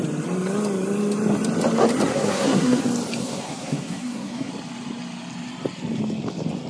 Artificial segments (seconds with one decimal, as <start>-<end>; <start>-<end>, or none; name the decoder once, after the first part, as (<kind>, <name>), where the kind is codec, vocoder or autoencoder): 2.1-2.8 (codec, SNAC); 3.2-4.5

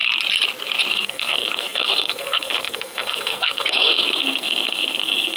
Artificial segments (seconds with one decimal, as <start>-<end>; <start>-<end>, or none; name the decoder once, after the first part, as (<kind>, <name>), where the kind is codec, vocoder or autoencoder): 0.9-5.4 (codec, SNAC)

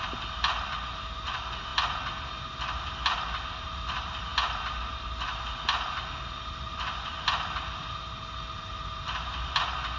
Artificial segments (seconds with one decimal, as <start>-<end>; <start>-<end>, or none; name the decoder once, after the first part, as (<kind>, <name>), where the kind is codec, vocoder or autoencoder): none

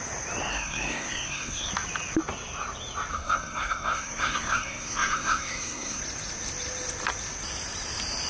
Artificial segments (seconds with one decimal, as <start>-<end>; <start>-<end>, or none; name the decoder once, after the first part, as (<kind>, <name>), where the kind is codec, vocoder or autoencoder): 0.5-1.7 (codec, SNAC); 3.1-6.0

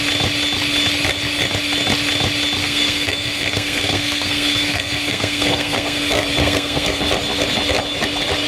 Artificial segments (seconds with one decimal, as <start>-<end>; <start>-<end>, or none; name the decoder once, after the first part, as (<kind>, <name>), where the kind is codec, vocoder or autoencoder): 2.6-6.0 (codec, SNAC); 6.4-7.0